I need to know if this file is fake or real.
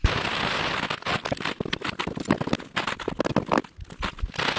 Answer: real